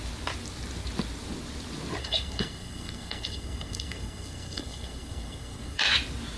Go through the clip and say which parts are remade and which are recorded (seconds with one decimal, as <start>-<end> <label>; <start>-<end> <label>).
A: 0.0-2.0 recorded; 2.0-5.8 remade; 5.8-6.4 recorded